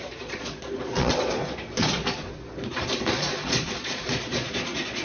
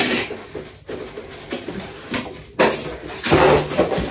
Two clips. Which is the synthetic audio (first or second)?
first